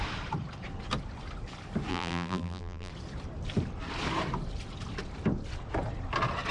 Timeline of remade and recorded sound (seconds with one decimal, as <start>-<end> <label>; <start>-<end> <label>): 0.0-1.9 recorded; 1.9-2.9 remade; 2.9-6.5 recorded